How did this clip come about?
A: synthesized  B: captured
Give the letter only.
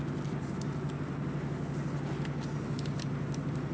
B